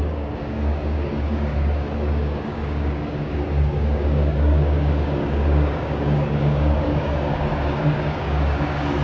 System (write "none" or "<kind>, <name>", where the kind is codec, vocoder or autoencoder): codec, DAC